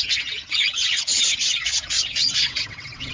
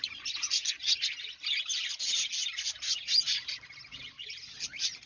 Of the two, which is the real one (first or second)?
second